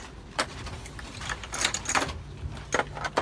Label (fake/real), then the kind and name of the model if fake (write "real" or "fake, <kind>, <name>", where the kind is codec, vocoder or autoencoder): real